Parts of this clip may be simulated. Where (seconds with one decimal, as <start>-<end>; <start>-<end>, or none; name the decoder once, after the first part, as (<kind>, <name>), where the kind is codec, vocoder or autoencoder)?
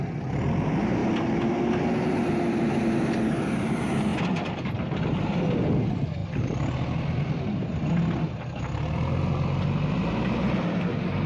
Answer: none